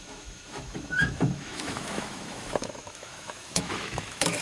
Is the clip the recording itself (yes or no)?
no